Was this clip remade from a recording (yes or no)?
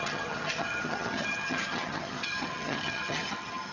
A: yes